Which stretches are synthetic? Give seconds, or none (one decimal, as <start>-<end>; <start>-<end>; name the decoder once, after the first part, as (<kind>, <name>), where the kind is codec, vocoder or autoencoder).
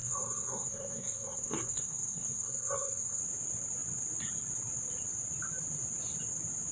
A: 0.0-3.2 (codec, SNAC)